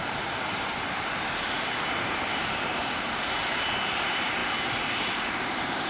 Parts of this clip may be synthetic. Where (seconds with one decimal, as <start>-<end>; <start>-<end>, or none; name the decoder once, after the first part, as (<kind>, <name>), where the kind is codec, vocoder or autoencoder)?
0.0-2.8 (vocoder, BigVGAN v2); 3.9-4.4; 5.0-5.9